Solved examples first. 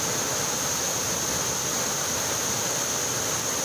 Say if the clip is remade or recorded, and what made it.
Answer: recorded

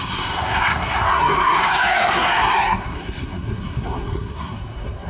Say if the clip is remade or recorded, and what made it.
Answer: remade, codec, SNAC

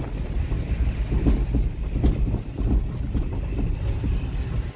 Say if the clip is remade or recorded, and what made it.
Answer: recorded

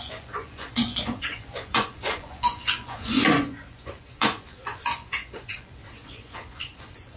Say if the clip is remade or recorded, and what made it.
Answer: remade, vocoder, Vocos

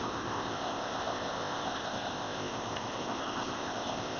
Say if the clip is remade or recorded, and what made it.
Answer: remade, codec, ZipCodec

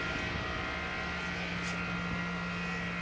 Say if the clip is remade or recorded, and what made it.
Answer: recorded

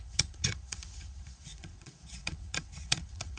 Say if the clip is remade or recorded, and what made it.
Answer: remade, vocoder, Vocos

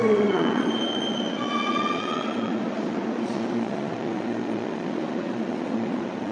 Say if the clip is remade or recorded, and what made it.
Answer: remade, vocoder, Vocos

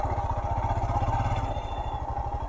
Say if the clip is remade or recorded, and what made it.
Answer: recorded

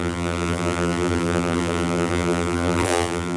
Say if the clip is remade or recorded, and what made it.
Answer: remade, vocoder, BigVGAN v2